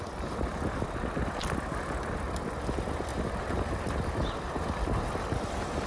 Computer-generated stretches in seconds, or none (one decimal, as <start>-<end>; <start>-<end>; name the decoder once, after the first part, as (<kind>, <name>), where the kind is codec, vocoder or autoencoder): 0.0-5.9 (vocoder, BigVGAN v2)